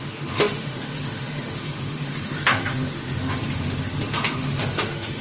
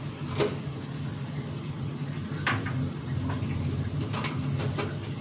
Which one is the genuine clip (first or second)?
second